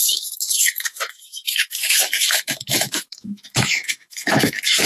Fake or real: fake